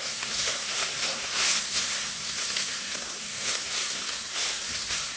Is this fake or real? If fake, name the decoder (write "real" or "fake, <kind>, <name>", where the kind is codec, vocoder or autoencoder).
fake, codec, SNAC